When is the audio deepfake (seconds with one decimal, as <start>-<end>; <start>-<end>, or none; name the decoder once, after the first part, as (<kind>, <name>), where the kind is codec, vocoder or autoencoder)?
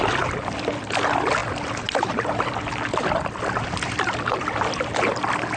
none